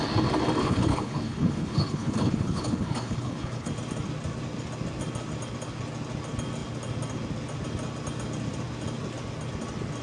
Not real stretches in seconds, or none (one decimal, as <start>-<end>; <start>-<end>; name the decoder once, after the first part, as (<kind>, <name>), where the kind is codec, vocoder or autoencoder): 0.6-3.7 (codec, HILCodec)